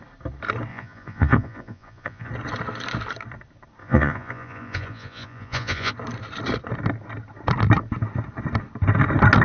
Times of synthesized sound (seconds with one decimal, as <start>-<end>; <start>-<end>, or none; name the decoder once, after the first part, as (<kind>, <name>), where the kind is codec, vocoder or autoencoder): 0.7-2.3 (vocoder, Vocos); 3.8-5.9